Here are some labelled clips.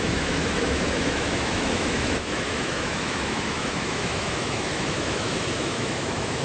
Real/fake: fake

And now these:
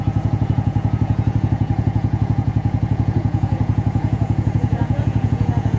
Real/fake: fake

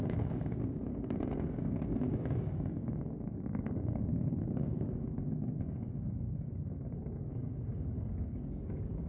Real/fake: fake